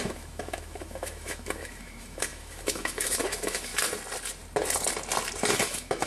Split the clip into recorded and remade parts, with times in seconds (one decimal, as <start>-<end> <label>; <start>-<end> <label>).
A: 0.0-3.7 remade; 3.7-5.5 recorded; 5.5-6.1 remade